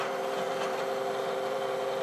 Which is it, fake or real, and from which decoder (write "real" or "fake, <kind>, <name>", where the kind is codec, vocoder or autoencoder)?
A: fake, vocoder, BigVGAN v2